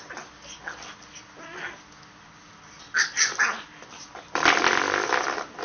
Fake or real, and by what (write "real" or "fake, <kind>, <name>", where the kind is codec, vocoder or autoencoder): real